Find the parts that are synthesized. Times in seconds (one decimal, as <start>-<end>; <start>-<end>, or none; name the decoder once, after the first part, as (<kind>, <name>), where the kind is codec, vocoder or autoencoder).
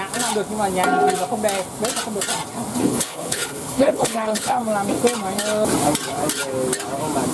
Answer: 2.8-4.6 (codec, HILCodec)